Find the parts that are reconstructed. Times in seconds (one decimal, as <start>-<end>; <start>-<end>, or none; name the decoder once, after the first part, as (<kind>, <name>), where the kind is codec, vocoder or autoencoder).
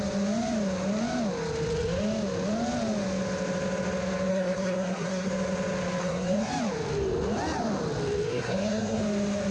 4.3-5.3 (codec, SNAC); 6.0-6.5; 8.3-9.0